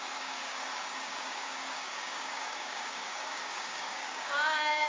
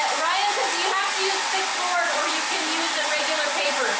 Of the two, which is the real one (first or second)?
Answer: second